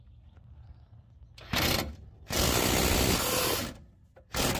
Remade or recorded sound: recorded